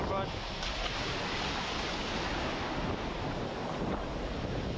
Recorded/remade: recorded